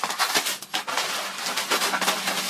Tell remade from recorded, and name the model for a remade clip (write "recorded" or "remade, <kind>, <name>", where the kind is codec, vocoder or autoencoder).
recorded